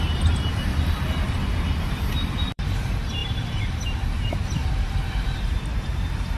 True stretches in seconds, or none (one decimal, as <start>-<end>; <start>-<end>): 0.7-1.9; 5.7-6.4